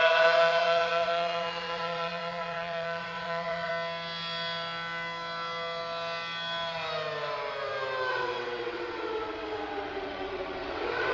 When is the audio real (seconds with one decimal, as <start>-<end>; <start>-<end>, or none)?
3.7-8.1